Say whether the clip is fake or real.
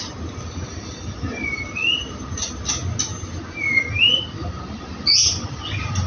real